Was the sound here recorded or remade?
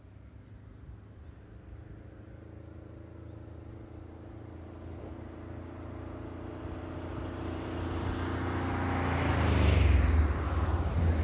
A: recorded